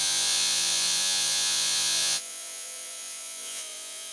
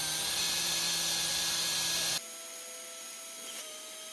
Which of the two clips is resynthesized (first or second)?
first